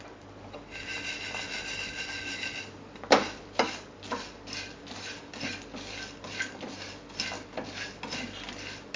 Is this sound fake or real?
real